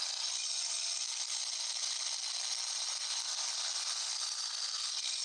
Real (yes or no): yes